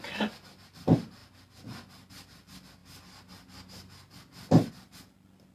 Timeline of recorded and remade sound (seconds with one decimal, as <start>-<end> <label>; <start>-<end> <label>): 0.0-5.5 recorded